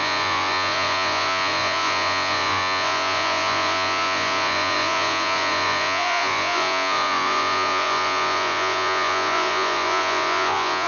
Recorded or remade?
remade